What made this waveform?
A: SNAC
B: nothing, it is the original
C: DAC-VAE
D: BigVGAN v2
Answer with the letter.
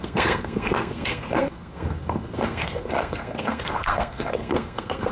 A